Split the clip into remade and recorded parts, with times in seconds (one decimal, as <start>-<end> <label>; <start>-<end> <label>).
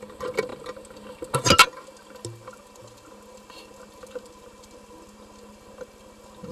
0.0-6.5 recorded